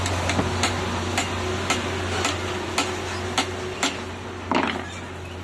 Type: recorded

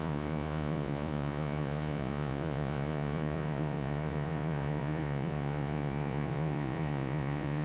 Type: remade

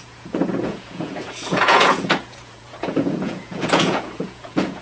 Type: remade